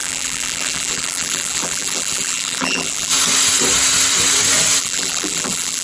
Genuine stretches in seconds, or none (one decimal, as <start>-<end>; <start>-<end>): 3.1-4.8

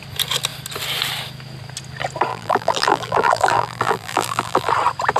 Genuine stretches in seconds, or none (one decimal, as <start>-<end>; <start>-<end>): 0.0-2.3; 4.7-5.2

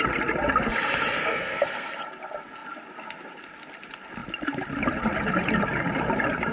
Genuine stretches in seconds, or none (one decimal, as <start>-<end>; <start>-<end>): 0.0-1.2; 1.9-6.5

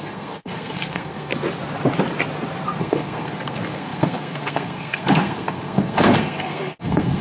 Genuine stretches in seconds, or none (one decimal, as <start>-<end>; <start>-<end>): 1.3-2.8